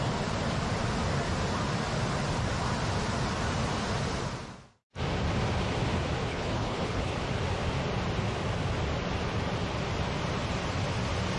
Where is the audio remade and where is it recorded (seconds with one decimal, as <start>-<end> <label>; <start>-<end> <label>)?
0.0-6.3 recorded; 6.3-7.1 remade; 7.1-11.4 recorded